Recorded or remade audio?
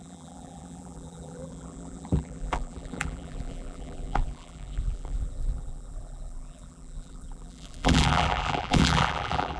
remade